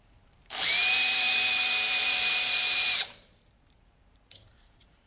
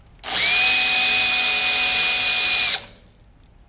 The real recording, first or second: second